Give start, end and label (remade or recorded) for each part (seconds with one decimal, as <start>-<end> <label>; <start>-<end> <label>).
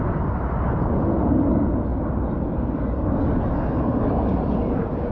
0.0-5.1 recorded